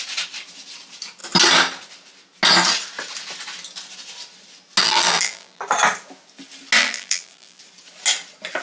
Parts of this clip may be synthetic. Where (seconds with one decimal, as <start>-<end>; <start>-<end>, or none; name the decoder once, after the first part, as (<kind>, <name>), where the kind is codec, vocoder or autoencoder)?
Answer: 4.8-5.6 (vocoder, BigVGAN v2); 6.8-7.6